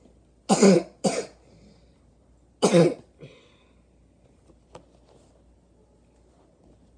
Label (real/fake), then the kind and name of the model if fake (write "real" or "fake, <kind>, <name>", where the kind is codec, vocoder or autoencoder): real